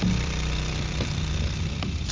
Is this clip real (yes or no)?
no